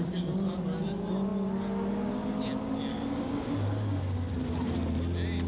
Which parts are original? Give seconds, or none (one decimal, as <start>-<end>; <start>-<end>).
0.0-2.9; 4.3-5.5